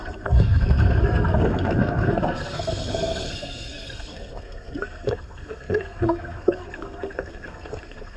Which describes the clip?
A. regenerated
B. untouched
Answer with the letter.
A